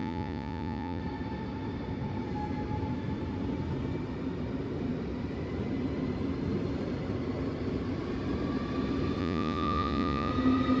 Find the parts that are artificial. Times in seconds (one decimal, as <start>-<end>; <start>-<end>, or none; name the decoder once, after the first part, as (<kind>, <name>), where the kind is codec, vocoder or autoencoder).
0.0-1.0 (vocoder, Vocos); 9.2-10.3